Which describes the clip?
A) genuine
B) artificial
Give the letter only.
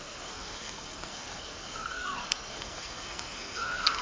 B